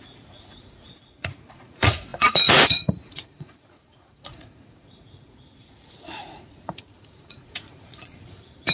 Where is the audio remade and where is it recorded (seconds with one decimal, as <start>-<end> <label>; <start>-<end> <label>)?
0.0-8.7 remade

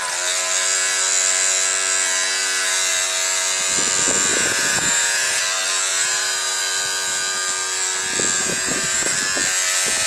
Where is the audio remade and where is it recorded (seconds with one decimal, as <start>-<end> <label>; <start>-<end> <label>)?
0.0-4.3 recorded; 4.3-5.4 remade; 5.4-5.9 recorded; 5.9-6.6 remade; 6.6-8.4 recorded; 8.4-9.1 remade; 9.1-10.1 recorded